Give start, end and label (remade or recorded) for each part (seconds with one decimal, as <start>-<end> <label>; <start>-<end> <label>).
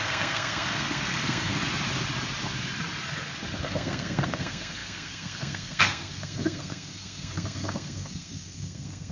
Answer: 0.0-1.5 remade; 1.5-3.6 recorded; 3.6-9.1 remade